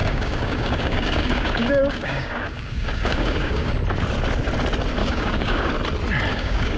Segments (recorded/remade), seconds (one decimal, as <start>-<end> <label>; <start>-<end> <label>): 0.0-3.7 remade; 3.7-5.0 recorded; 5.0-5.7 remade; 5.7-6.3 recorded; 6.3-6.8 remade